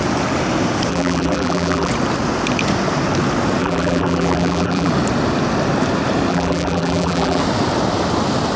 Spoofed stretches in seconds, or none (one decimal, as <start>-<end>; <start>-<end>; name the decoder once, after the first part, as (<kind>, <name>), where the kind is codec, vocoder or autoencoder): 0.9-1.9 (vocoder, BigVGAN v2); 3.6-4.9; 6.3-7.4